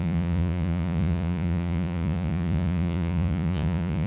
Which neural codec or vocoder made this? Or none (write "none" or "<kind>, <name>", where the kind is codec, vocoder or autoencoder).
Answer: vocoder, Vocos